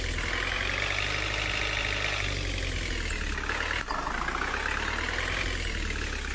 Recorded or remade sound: recorded